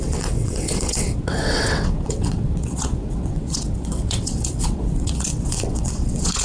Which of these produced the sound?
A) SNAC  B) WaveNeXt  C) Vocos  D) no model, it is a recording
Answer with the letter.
B